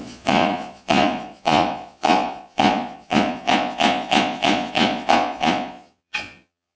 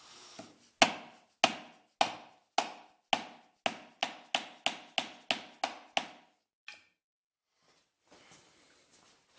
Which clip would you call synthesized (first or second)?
first